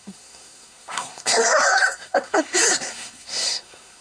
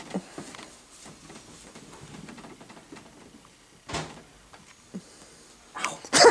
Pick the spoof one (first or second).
first